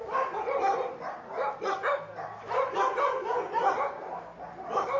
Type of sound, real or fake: real